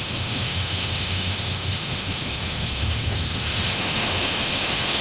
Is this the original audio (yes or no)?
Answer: no